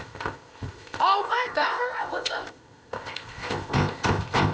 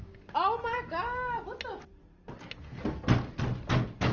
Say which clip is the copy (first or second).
first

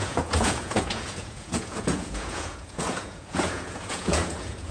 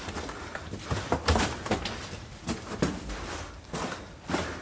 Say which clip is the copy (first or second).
first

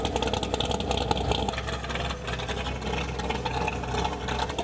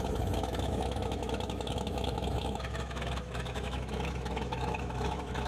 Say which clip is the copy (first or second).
second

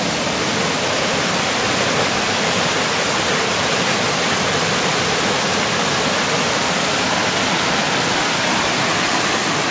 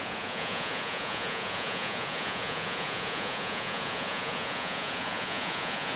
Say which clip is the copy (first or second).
second